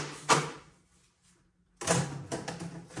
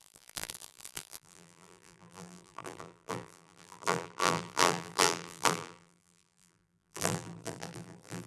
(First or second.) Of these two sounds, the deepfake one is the second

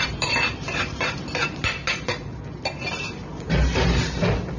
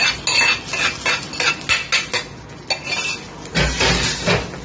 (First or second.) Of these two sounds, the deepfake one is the first